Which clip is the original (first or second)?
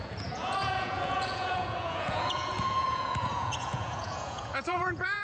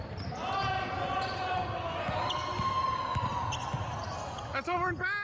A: second